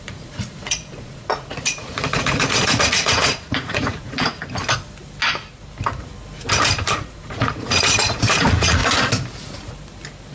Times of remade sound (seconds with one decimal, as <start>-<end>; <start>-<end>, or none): 0.0-4.4; 7.0-8.8